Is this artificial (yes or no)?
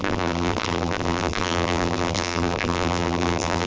yes